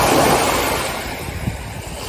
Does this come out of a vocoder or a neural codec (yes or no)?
no